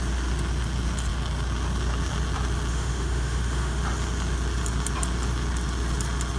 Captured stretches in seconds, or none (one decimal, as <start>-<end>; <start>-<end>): 0.0-2.7; 3.8-6.4